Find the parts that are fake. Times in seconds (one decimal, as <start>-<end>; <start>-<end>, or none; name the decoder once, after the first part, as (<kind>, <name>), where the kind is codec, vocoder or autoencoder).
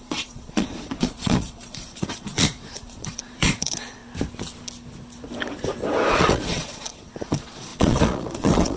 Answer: 0.0-4.0 (vocoder, Vocos); 6.1-8.8